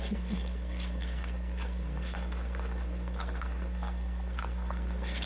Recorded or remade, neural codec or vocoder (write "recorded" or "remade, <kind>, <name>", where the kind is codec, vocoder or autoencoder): remade, codec, SNAC